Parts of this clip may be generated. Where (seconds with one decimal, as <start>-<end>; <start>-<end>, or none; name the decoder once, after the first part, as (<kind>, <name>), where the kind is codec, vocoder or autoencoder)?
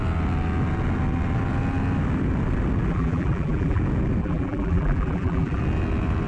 2.9-3.8 (vocoder, BigVGAN v2); 4.2-5.6